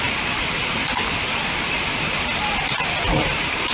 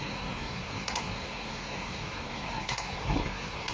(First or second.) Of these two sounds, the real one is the first